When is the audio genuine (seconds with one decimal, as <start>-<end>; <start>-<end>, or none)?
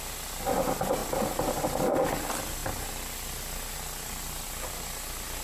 0.0-5.4